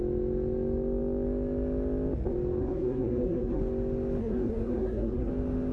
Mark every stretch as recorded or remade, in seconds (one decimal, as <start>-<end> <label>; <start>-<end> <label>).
0.0-2.6 recorded; 2.6-3.6 remade; 3.6-4.2 recorded; 4.2-5.3 remade; 5.3-5.7 recorded